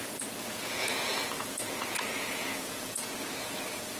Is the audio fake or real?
fake